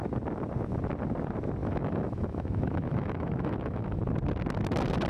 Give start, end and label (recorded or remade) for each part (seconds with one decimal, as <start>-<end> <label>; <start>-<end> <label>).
0.0-1.6 recorded; 1.6-4.0 remade; 4.0-5.1 recorded